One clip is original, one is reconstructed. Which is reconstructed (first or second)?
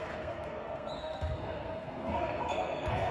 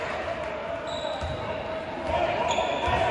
first